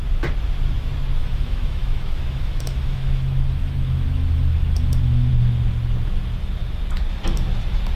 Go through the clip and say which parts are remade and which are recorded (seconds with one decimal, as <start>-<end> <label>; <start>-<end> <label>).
0.0-1.2 recorded; 1.2-5.3 remade; 5.3-8.0 recorded